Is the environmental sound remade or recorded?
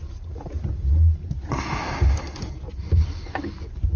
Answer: recorded